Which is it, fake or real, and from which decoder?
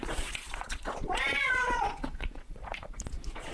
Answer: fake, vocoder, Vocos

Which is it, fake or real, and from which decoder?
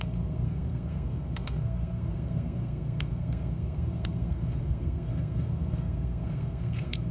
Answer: fake, codec, SNAC